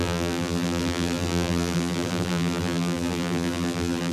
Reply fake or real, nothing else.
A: fake